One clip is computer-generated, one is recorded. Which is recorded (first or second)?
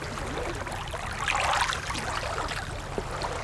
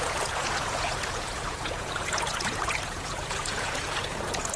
first